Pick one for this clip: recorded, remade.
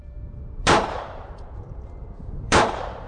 remade